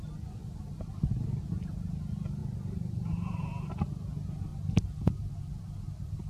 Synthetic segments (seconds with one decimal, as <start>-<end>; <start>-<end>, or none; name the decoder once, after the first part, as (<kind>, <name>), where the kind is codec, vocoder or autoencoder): 0.4-0.9 (vocoder, BigVGAN v2); 2.4-3.4